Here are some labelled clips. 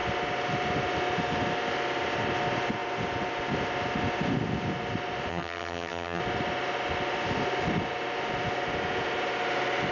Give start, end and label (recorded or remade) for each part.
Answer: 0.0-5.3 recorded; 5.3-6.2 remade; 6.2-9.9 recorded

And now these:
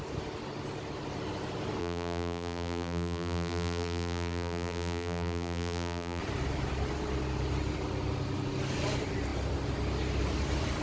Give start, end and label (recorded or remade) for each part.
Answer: 0.0-1.8 recorded; 1.8-6.2 remade; 6.2-10.8 recorded